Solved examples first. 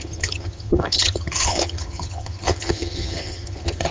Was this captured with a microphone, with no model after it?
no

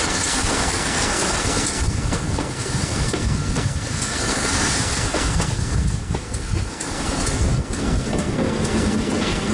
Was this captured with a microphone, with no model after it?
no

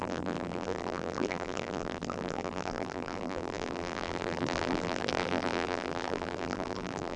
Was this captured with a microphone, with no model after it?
no